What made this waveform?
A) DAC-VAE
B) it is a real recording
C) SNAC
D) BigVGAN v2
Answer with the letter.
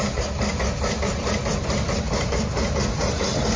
B